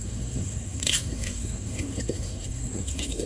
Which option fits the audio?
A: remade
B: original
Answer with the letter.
A